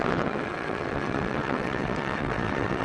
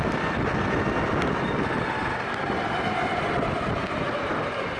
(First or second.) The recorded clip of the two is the second